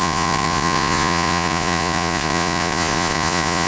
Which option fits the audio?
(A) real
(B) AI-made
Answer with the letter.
B